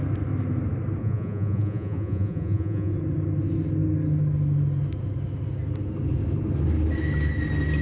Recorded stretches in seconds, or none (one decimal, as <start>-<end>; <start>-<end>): 0.0-1.0; 2.9-7.8